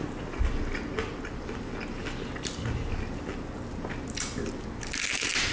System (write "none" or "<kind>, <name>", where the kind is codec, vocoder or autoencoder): none